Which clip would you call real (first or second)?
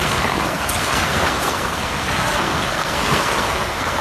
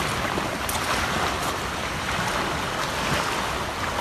second